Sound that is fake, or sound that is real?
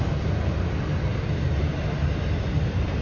real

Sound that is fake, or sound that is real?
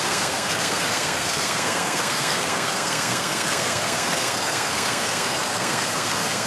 fake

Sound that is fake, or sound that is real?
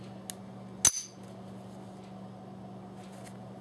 real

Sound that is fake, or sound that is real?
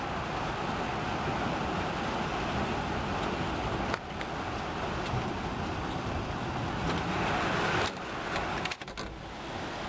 real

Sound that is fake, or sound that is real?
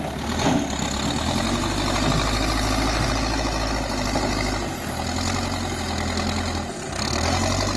real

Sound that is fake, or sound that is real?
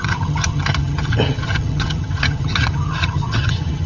fake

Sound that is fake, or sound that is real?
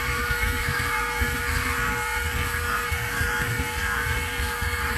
fake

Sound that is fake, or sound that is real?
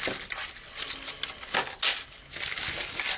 real